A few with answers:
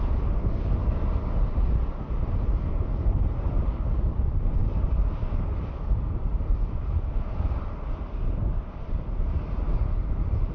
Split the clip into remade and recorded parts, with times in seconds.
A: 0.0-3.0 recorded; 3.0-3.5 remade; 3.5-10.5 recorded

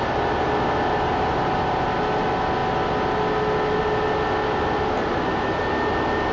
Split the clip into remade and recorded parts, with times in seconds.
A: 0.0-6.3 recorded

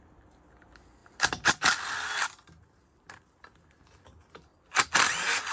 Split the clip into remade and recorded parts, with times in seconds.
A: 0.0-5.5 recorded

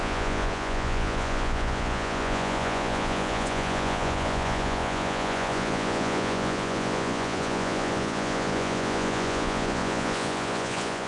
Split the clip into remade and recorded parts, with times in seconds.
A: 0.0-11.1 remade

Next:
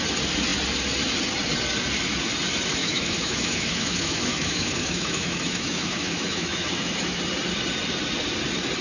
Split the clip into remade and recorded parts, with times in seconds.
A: 0.0-2.8 recorded; 2.8-7.2 remade; 7.2-8.8 recorded

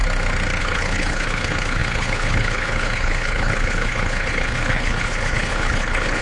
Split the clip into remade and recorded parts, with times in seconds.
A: 0.0-0.6 recorded; 0.6-6.2 remade

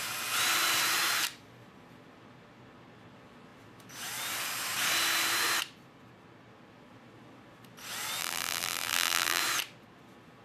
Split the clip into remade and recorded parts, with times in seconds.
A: 0.0-8.2 recorded; 8.2-9.4 remade; 9.4-10.4 recorded